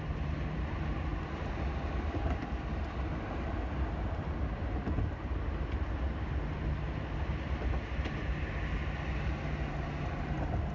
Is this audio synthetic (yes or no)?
no